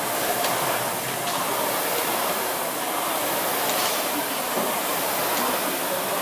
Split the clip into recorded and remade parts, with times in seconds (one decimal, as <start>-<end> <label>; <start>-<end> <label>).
0.0-2.0 recorded; 2.0-2.6 remade; 2.6-3.9 recorded; 3.9-5.2 remade; 5.2-6.2 recorded